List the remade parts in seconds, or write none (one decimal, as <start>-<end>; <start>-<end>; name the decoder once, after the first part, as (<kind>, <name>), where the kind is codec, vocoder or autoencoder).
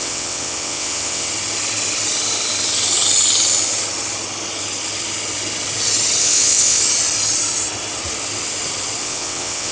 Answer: 0.0-1.3 (vocoder, WaveNeXt); 6.2-6.8; 9.0-9.7